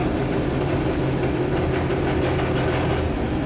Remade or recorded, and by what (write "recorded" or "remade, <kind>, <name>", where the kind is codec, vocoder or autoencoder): recorded